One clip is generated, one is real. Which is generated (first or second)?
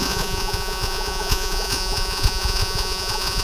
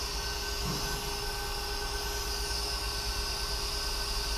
first